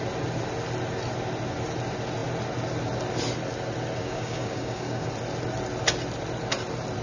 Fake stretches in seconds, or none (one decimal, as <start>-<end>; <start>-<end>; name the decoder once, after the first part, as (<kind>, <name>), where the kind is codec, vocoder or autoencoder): 4.0-5.1 (codec, DAC)